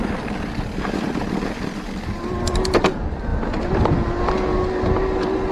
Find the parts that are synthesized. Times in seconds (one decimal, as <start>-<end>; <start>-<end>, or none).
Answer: none

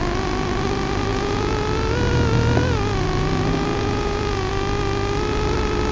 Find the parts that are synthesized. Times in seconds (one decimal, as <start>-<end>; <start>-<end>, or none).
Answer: 1.1-1.6; 3.7-4.5

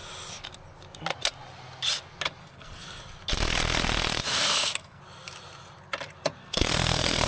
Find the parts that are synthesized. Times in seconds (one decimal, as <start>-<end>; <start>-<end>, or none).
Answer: 2.4-3.0; 4.3-5.0; 6.4-7.3

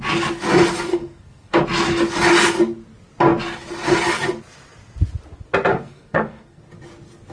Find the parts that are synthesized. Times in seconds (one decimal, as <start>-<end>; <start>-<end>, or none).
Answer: 0.9-1.6; 5.7-6.6

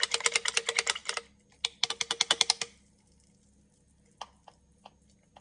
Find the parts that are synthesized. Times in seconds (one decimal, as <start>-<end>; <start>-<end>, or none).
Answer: none